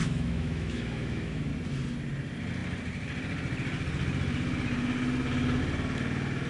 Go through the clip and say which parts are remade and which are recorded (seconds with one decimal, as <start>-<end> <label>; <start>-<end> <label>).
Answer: 0.0-1.5 remade; 1.5-6.5 recorded